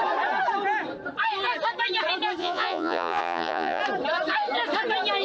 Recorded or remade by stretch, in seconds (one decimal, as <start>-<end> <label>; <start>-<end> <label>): 0.0-2.4 recorded; 2.4-3.8 remade; 3.8-5.2 recorded